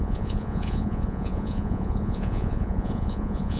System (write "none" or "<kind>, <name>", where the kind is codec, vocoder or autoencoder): vocoder, Vocos